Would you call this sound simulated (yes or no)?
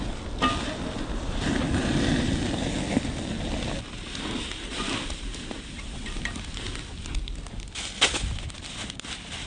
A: no